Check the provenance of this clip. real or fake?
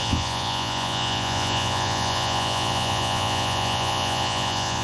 fake